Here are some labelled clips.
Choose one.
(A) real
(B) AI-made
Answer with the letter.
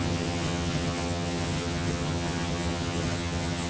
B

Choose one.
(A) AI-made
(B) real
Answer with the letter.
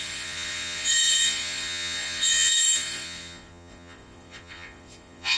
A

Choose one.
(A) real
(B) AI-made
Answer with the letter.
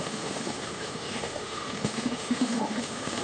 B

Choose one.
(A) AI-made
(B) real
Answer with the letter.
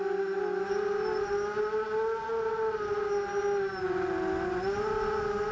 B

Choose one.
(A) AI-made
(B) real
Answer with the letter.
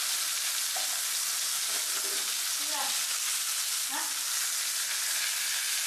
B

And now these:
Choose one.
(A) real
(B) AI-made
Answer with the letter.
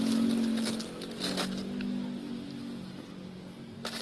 A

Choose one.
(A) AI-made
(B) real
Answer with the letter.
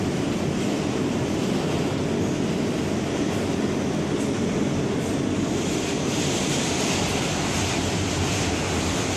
B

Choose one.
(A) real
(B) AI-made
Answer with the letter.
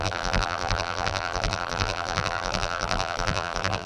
B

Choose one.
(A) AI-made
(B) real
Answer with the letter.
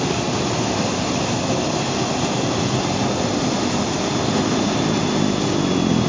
B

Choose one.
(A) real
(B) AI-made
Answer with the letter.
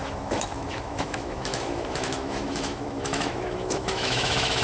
B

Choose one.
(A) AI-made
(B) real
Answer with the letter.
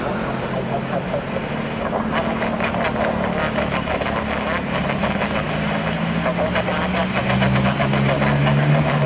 B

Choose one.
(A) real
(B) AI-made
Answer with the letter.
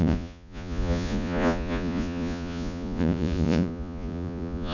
B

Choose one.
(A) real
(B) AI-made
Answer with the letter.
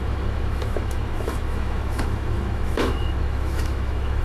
B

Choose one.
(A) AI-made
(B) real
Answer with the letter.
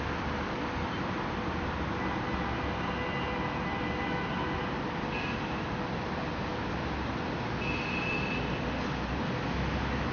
B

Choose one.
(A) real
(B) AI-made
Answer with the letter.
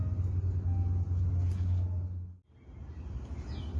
A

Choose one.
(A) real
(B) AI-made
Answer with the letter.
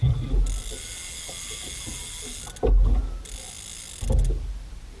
A